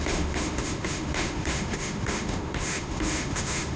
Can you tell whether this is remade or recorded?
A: remade